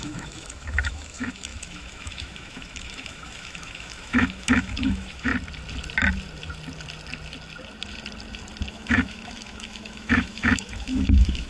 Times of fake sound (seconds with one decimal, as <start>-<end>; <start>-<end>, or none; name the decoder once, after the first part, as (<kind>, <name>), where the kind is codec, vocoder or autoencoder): 0.0-5.3 (autoencoder, DAC-VAE); 8.7-11.5